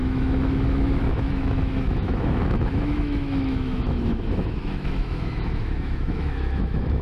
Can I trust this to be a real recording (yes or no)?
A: no